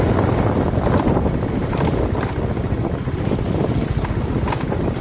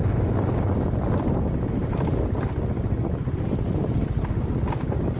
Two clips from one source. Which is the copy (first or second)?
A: first